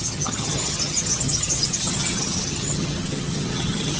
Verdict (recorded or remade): remade